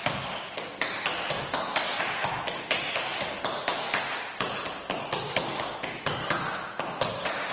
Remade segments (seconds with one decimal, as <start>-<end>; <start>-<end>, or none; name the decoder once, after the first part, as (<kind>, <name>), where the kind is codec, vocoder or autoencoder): 0.0-2.0 (vocoder, BigVGAN v2)